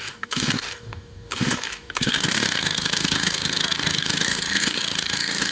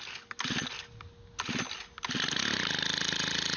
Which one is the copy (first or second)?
first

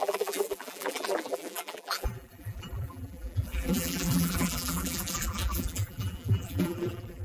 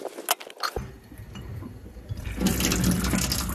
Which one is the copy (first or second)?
first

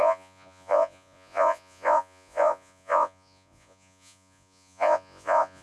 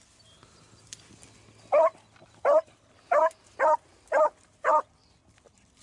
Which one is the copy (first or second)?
first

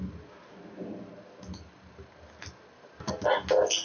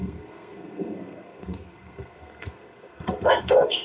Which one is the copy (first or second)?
second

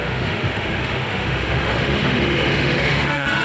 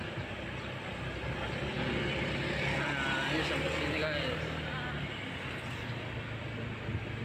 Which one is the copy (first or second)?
first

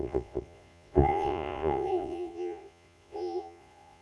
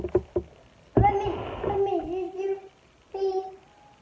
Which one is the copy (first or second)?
first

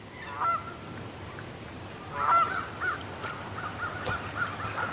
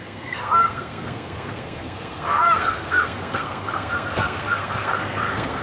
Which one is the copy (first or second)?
second